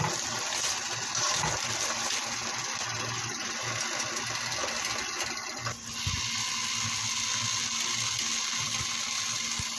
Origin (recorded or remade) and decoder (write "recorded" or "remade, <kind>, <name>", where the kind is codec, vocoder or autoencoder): recorded